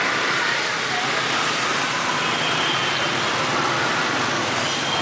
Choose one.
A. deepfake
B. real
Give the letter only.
B